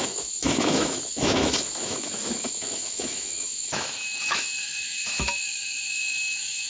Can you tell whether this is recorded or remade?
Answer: remade